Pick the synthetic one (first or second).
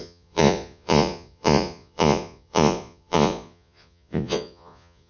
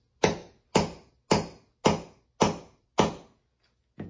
first